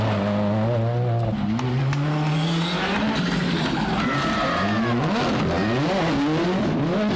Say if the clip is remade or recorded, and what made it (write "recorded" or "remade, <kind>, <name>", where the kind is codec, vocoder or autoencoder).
recorded